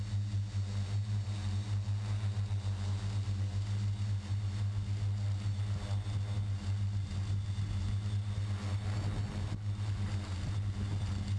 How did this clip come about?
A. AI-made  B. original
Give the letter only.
B